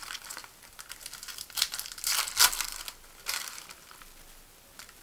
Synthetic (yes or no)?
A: no